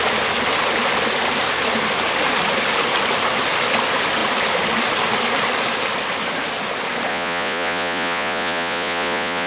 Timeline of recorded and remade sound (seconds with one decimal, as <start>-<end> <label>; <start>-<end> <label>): 0.0-7.1 recorded; 7.1-9.5 remade